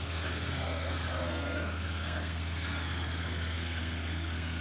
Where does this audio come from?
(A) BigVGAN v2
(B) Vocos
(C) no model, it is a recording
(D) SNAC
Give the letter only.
D